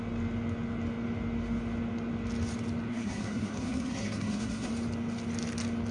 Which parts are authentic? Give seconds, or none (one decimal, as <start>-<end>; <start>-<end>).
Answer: 0.0-2.9; 4.7-5.9